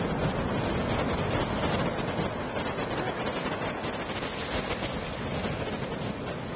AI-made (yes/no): no